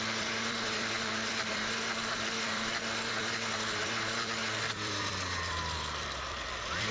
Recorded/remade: remade